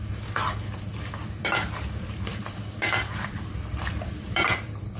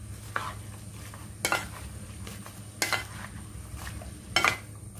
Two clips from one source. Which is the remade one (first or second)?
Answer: first